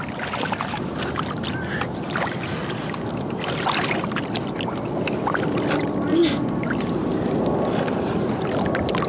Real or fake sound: real